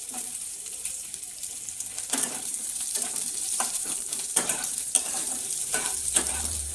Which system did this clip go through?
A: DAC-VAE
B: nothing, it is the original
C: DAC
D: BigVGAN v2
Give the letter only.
D